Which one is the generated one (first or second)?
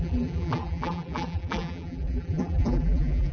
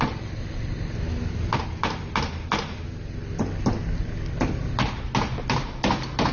first